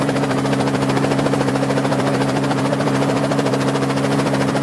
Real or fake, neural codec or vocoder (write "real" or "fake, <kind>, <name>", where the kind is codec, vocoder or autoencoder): fake, vocoder, BigVGAN v2